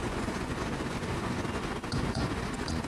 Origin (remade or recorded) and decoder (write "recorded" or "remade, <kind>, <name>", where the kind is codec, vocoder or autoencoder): remade, vocoder, Vocos